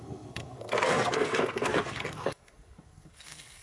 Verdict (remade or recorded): remade